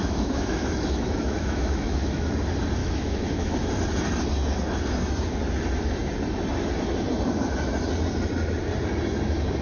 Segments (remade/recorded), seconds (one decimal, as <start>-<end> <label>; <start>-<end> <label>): 0.0-2.3 remade; 2.3-2.8 recorded; 2.8-3.7 remade; 3.7-9.6 recorded